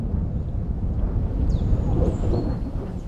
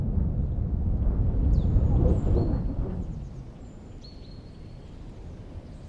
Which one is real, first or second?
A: second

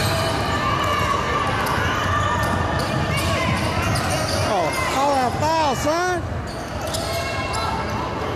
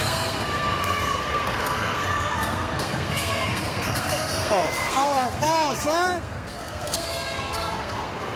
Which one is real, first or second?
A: first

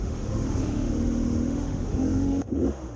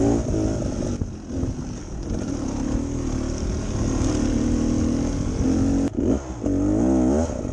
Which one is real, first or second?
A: second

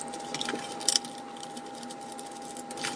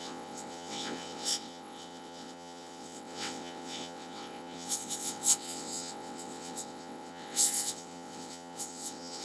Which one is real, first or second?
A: first